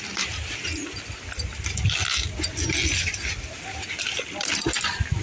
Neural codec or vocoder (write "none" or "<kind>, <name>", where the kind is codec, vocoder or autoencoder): none